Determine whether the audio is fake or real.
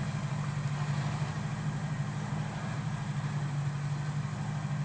real